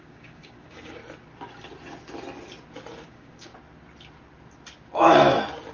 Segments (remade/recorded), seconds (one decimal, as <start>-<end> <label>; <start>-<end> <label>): 0.0-1.0 remade; 1.0-3.0 recorded; 3.0-3.5 remade; 3.5-5.7 recorded